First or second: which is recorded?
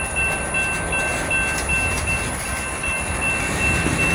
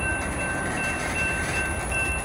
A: first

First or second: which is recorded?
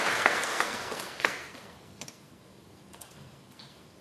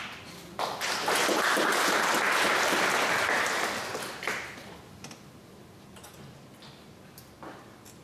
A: second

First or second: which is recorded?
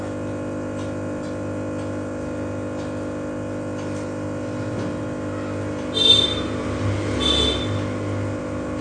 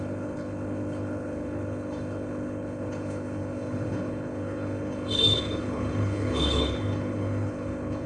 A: first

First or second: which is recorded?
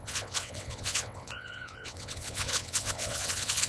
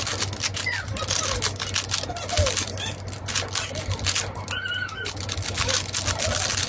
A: second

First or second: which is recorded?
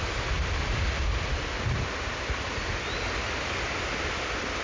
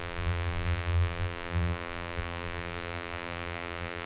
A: first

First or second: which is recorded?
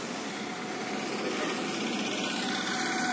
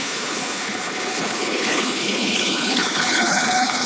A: first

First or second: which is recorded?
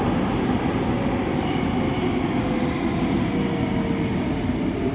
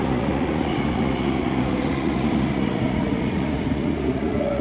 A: first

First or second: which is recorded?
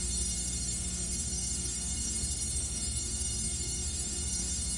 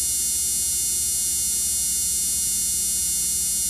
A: second